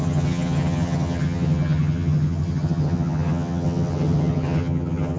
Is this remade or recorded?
remade